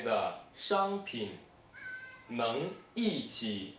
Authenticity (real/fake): fake